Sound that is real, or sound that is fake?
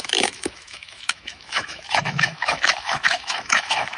fake